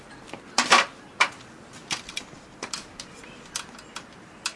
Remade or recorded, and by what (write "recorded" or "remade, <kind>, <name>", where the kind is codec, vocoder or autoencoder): recorded